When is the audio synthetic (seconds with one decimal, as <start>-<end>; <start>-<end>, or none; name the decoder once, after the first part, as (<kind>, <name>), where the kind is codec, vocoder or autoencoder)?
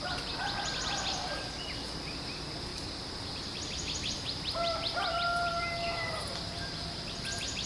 none